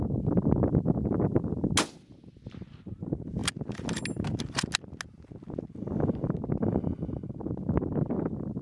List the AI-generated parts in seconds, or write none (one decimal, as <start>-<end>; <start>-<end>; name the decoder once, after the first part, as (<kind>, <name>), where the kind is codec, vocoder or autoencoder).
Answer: none